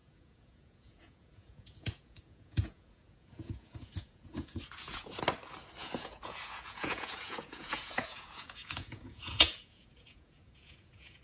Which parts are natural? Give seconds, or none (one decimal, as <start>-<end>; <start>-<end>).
5.2-5.8

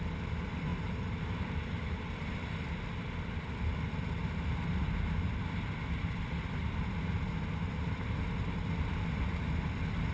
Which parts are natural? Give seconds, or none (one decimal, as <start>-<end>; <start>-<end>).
0.0-10.1

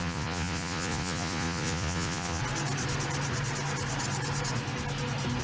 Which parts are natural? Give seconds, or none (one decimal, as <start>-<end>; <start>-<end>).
2.4-5.4

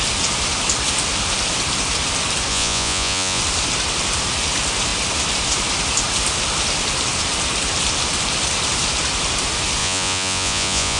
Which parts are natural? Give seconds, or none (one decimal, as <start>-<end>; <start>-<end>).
0.0-2.5; 3.4-9.8

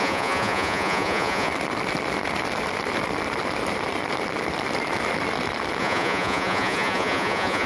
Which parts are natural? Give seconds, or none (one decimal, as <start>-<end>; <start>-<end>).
1.5-5.8

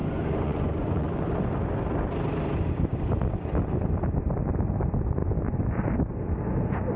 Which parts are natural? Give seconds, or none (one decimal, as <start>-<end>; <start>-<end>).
1.2-7.0

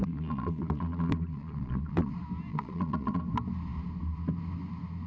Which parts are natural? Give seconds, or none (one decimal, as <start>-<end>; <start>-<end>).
2.1-2.5; 3.2-5.1

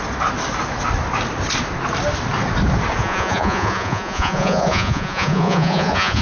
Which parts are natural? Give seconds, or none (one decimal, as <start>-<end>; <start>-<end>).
0.0-3.0